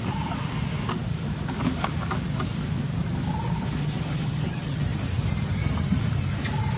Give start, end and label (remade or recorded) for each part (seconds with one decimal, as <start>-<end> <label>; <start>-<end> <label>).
0.0-3.8 recorded; 3.8-4.8 remade; 4.8-6.8 recorded

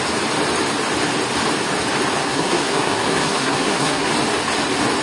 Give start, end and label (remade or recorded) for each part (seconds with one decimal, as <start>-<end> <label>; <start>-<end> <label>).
0.0-2.2 recorded; 2.2-4.1 remade; 4.1-5.0 recorded

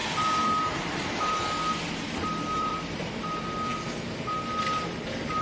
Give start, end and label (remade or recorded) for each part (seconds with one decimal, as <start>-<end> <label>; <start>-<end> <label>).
0.0-3.2 remade; 3.2-5.4 recorded